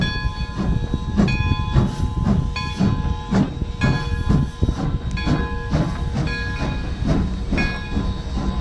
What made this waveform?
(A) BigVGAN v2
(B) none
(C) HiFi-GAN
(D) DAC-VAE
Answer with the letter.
B